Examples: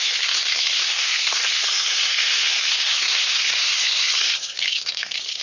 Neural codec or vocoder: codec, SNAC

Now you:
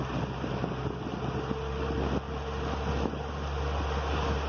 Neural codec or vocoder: none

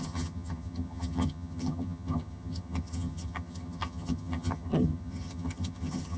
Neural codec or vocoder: vocoder, HiFi-GAN